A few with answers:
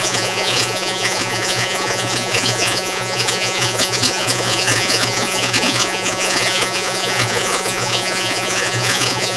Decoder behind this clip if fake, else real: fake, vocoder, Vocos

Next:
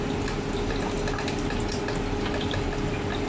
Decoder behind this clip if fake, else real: real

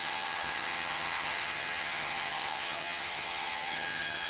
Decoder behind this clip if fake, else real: fake, vocoder, HiFi-GAN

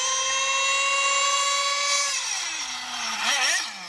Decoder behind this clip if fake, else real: real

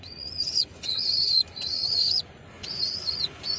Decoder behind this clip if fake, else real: fake, vocoder, Vocos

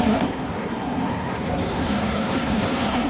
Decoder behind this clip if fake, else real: fake, codec, SNAC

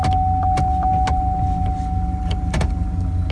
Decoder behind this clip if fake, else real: real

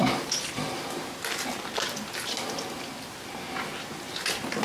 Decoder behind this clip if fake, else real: real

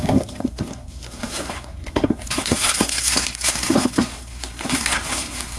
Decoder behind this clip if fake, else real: fake, codec, SNAC